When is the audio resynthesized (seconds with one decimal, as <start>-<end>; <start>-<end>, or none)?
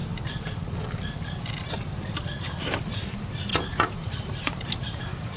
1.8-5.4